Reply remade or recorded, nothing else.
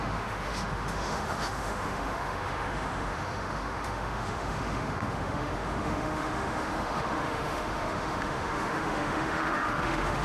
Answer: remade